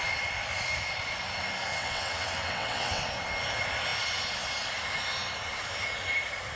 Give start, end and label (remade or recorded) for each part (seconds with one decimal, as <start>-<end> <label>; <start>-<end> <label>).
0.0-1.7 recorded; 1.7-3.0 remade; 3.0-6.6 recorded